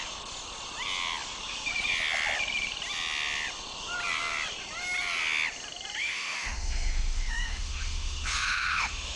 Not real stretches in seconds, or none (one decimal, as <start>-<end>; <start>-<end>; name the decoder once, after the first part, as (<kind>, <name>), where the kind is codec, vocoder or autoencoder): 6.0-9.2 (autoencoder, DAC-VAE)